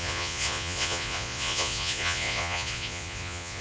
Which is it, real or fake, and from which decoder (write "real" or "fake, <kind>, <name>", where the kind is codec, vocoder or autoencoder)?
fake, vocoder, Vocos